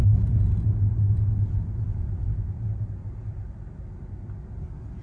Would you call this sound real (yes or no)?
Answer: yes